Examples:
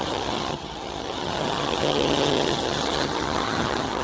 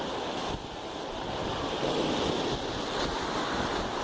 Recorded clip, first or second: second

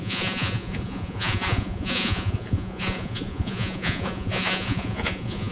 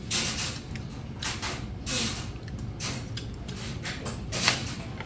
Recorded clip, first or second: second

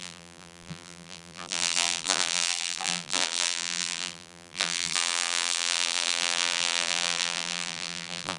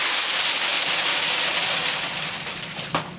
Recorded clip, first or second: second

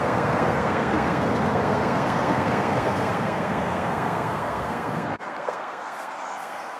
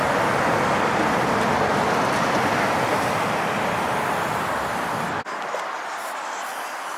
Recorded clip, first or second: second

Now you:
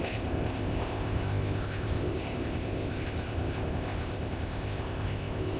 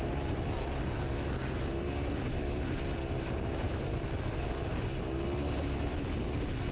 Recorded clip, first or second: second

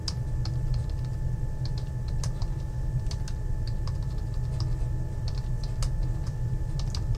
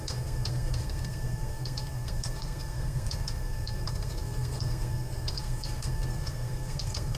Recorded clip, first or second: first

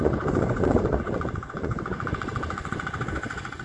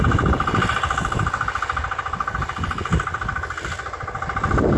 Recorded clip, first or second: second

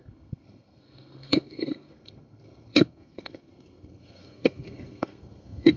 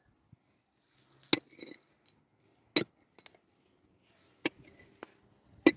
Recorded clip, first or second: second